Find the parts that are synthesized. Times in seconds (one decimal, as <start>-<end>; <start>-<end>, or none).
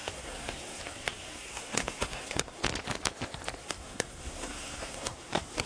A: 0.0-2.6; 3.6-5.7